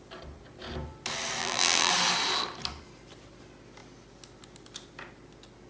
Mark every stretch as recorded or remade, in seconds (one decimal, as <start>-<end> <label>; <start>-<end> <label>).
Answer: 0.0-1.4 recorded; 1.4-1.9 remade; 1.9-5.7 recorded